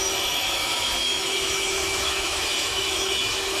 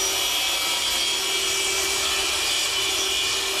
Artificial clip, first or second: first